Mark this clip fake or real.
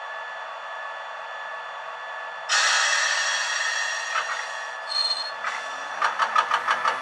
real